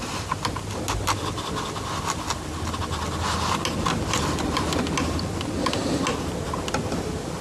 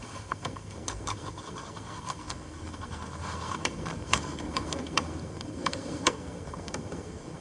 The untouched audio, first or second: first